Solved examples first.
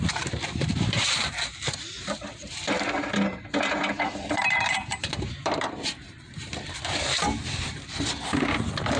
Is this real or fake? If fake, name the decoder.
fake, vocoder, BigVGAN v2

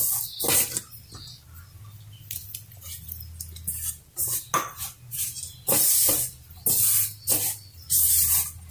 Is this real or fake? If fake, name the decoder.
real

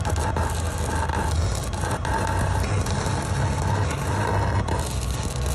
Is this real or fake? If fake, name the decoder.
real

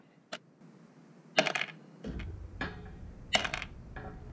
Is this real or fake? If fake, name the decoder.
real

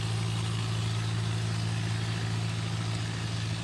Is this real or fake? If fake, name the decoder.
real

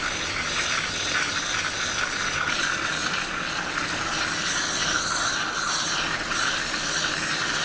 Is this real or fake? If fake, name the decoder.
real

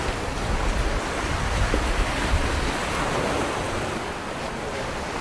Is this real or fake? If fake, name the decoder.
real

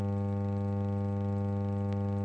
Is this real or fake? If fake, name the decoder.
real